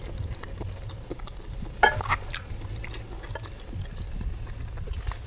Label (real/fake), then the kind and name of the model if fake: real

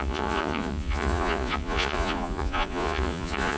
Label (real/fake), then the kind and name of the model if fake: fake, vocoder, Vocos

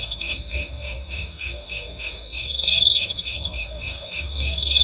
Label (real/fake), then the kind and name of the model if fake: fake, codec, DAC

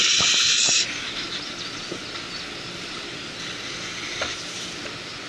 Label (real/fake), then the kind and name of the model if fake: real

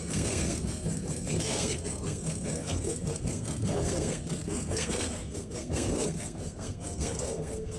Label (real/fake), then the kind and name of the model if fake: fake, codec, SNAC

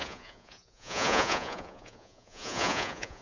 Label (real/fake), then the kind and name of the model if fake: fake, vocoder, Vocos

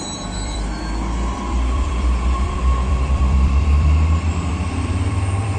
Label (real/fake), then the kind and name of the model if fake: fake, vocoder, BigVGAN v2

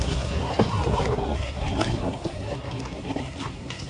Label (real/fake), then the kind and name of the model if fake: fake, codec, SNAC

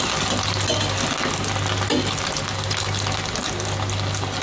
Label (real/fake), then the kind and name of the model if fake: real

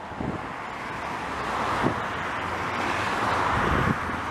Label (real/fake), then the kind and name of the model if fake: real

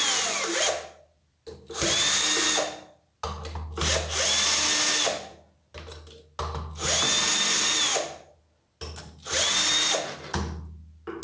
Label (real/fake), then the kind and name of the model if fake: real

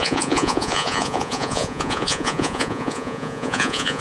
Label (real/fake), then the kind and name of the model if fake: fake, vocoder, Vocos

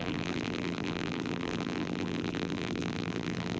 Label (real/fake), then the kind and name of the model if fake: fake, vocoder, BigVGAN v2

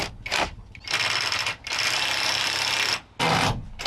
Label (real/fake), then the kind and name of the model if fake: real